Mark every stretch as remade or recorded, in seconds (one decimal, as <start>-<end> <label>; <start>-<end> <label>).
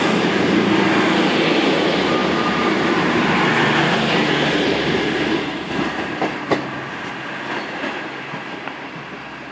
0.0-9.5 recorded